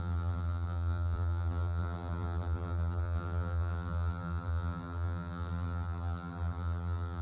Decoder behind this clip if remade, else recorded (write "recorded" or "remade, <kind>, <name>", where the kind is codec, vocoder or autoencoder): remade, vocoder, BigVGAN v2